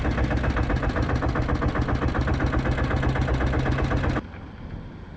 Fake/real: real